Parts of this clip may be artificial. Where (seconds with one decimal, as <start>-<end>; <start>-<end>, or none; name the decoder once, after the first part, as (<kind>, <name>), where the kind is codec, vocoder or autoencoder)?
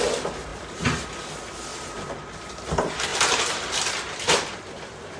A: 0.5-1.1 (vocoder, BigVGAN v2); 1.7-2.4; 3.1-3.7